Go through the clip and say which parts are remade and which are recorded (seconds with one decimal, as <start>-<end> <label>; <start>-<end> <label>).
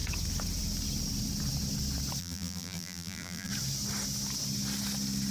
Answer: 0.0-2.2 recorded; 2.2-3.5 remade; 3.5-5.3 recorded